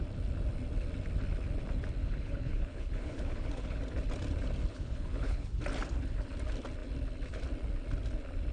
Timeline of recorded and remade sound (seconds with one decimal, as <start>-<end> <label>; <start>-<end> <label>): 0.0-2.0 recorded; 2.0-3.8 remade; 3.8-4.7 recorded; 4.7-5.6 remade; 5.6-8.5 recorded